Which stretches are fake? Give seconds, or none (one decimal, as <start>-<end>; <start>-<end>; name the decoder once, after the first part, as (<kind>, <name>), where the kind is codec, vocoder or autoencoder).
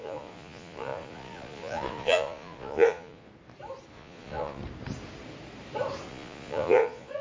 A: 0.0-3.3 (vocoder, Vocos); 3.9-4.6; 6.1-7.2